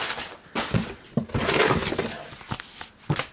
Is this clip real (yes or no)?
yes